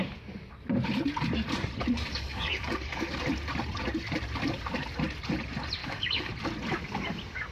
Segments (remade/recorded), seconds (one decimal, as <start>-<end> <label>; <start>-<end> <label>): 0.0-2.1 recorded; 2.1-3.1 remade; 3.1-5.8 recorded; 5.8-6.3 remade; 6.3-7.5 recorded